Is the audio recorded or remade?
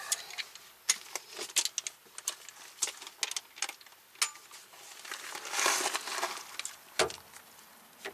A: recorded